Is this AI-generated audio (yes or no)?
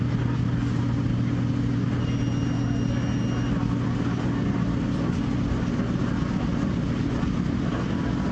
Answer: no